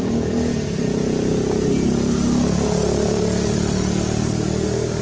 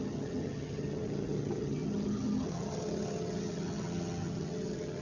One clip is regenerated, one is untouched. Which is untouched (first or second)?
first